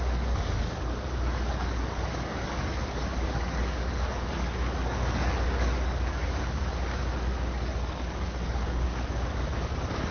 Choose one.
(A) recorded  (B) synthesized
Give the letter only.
B